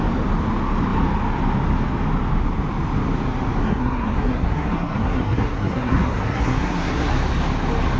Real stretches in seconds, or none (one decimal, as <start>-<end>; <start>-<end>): 0.0-3.6; 7.1-8.0